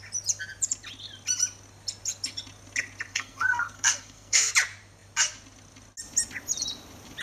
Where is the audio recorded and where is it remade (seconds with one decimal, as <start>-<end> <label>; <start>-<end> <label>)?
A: 0.0-3.1 recorded; 3.1-4.5 remade; 4.5-7.2 recorded

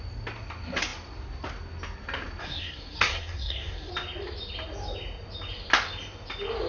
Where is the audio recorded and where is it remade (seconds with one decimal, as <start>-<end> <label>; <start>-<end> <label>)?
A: 0.0-2.4 recorded; 2.4-3.9 remade; 3.9-6.7 recorded

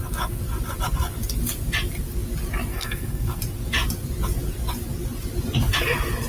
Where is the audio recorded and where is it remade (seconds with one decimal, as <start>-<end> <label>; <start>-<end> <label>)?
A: 0.0-2.7 recorded; 2.7-3.4 remade; 3.4-6.3 recorded

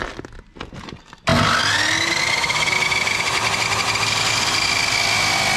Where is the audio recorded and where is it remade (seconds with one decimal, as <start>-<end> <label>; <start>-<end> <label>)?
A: 0.0-5.6 recorded